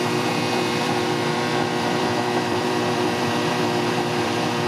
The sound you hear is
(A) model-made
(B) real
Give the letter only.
A